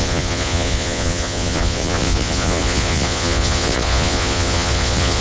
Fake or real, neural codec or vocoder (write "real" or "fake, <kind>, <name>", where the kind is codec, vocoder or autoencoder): fake, vocoder, Vocos